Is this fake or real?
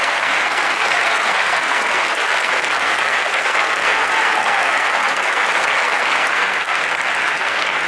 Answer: fake